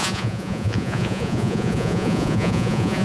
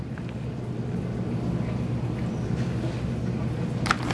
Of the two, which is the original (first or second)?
second